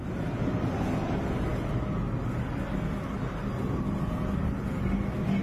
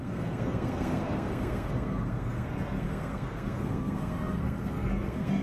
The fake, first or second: second